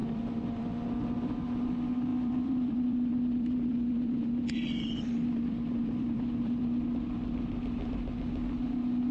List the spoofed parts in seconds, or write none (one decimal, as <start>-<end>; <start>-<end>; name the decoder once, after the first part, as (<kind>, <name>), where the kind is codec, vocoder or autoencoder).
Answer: 0.0-0.7 (vocoder, BigVGAN v2); 2.1-6.6

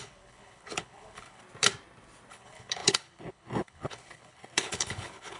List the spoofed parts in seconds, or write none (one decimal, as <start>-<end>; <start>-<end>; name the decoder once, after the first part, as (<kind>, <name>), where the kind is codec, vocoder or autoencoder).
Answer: 0.0-1.4 (codec, HILCodec); 2.3-5.4